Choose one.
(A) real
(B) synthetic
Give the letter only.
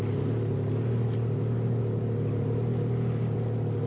A